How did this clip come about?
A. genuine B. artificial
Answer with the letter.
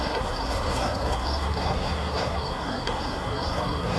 B